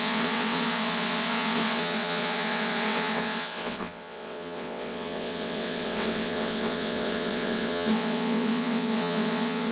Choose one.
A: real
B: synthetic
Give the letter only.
B